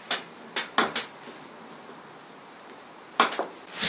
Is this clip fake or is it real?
real